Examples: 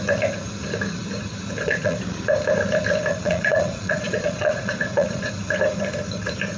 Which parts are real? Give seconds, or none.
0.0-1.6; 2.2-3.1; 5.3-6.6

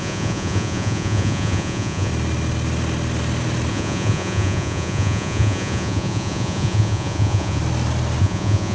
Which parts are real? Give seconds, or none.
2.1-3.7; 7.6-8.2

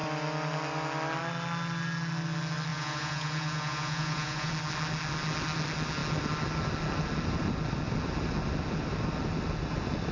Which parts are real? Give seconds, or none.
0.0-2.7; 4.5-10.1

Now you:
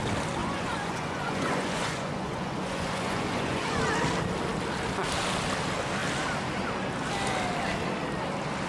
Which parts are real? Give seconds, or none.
0.0-0.4; 3.8-8.7

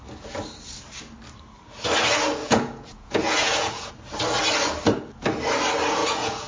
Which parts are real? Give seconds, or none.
0.0-2.4; 3.9-6.0

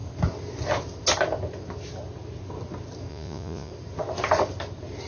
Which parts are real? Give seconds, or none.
0.0-3.1; 3.7-5.1

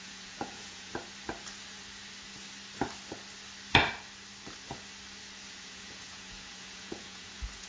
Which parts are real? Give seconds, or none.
0.9-5.5

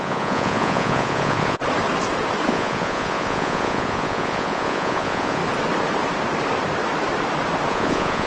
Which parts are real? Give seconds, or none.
1.6-2.5; 5.4-7.7